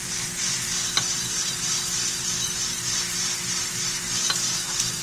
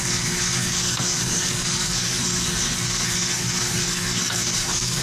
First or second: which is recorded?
first